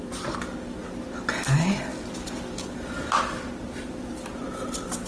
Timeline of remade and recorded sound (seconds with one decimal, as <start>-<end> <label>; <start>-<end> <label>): 0.0-5.1 recorded